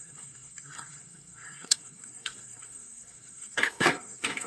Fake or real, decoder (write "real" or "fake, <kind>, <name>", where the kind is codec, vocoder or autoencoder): fake, codec, SNAC